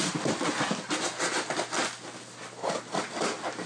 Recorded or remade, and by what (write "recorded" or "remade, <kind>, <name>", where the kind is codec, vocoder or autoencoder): recorded